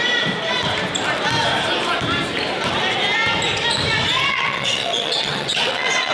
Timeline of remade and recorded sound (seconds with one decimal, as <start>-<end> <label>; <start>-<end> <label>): 0.0-4.3 recorded; 4.3-6.1 remade